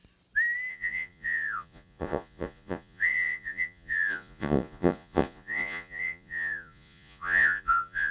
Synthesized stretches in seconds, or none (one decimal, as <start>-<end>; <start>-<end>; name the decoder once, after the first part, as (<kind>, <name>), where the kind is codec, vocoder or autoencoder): 0.7-8.1 (vocoder, Vocos)